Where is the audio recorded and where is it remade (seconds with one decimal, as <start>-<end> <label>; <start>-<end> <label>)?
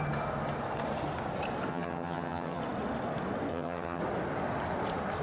0.0-1.7 recorded; 1.7-2.6 remade; 2.6-3.5 recorded; 3.5-4.0 remade; 4.0-5.2 recorded